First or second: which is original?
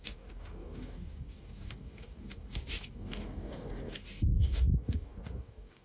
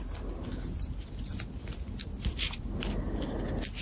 second